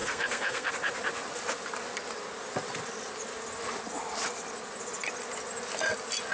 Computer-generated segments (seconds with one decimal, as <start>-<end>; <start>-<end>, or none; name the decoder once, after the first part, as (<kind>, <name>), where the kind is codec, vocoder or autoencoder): 0.0-0.7 (codec, SNAC)